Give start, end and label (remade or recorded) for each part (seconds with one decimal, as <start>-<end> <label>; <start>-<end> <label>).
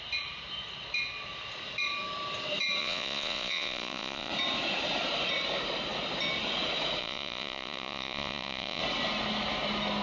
0.0-2.8 recorded; 2.8-4.3 remade; 4.3-7.0 recorded; 7.0-8.8 remade; 8.8-10.0 recorded